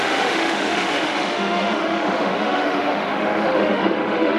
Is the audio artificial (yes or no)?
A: yes